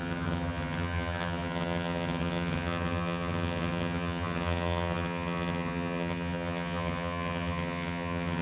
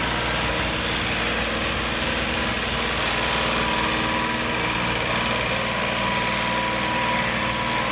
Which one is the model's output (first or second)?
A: first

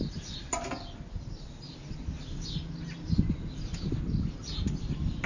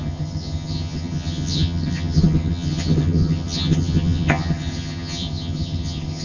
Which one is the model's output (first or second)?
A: second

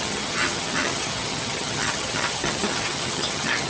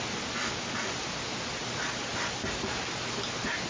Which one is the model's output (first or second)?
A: first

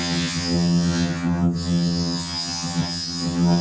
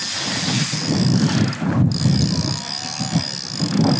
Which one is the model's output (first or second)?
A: first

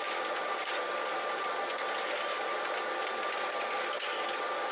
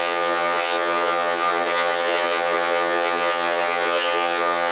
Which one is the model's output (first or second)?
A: second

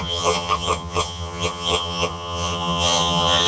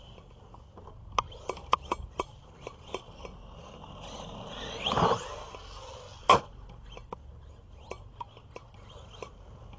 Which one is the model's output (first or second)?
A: first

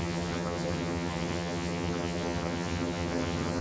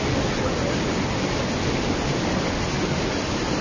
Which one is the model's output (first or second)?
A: first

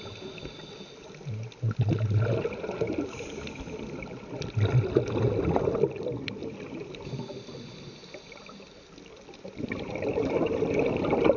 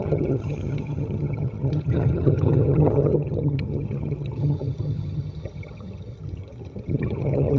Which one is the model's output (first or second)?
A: second